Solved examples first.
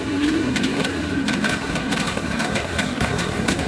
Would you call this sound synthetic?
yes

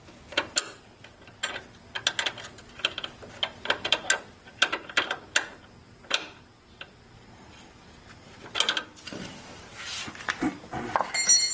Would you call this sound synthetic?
no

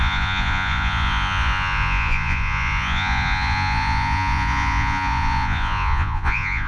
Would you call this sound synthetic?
yes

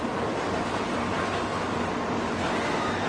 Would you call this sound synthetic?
no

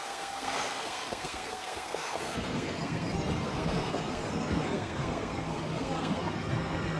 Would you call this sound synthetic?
yes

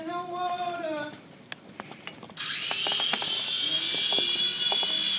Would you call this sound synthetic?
no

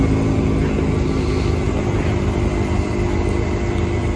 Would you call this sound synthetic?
no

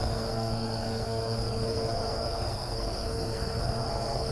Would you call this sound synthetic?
yes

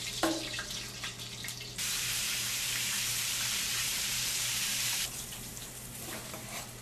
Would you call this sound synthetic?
yes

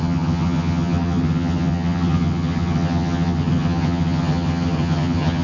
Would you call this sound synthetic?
yes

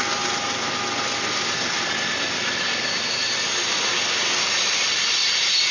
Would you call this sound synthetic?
no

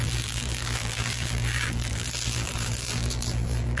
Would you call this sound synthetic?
yes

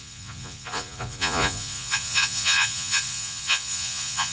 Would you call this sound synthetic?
yes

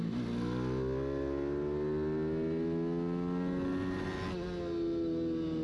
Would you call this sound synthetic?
no